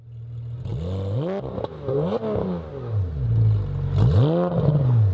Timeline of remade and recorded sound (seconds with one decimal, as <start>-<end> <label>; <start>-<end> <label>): 0.0-5.1 recorded